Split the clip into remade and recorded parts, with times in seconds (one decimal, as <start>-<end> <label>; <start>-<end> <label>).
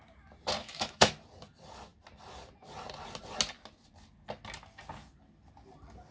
0.0-0.6 recorded; 0.6-1.1 remade; 1.1-6.1 recorded